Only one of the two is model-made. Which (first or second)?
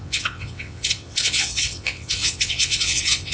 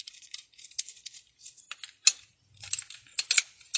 first